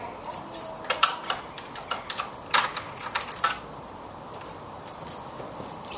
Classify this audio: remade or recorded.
remade